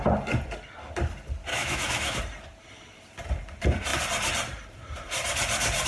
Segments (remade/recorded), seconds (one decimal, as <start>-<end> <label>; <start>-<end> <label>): 0.0-1.5 recorded; 1.5-2.2 remade; 2.2-5.9 recorded